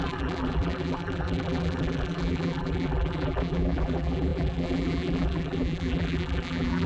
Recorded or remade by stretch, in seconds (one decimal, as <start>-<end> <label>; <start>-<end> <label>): 0.0-6.9 remade